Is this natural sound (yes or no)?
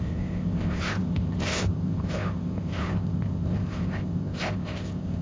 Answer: no